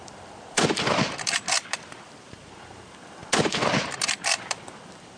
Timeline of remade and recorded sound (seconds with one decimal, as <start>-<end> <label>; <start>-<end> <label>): 0.0-5.2 recorded